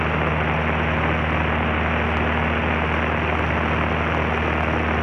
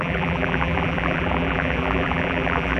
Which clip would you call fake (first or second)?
second